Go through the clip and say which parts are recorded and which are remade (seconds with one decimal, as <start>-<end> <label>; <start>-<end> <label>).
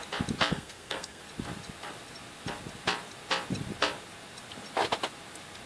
0.0-0.5 recorded; 0.5-1.2 remade; 1.2-5.7 recorded